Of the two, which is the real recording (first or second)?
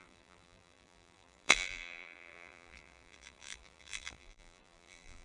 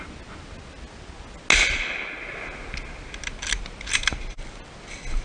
second